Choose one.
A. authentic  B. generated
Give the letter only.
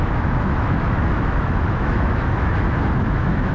B